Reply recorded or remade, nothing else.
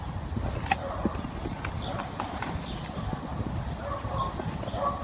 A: recorded